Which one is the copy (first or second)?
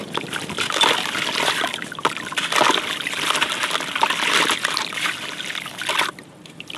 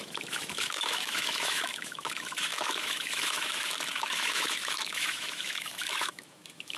second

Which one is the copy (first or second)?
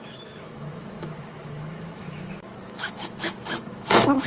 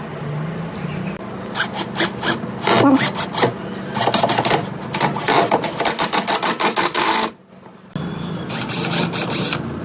first